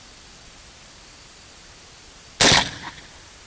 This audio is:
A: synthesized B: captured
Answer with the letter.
B